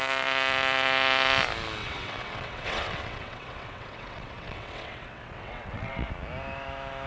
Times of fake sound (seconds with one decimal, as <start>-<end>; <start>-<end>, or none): 1.8-6.1